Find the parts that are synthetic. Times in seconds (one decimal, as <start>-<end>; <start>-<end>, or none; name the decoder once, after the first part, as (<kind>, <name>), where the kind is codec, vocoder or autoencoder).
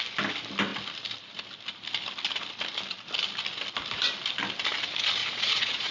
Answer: 5.2-5.9 (vocoder, Vocos)